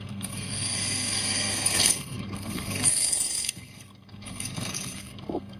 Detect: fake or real fake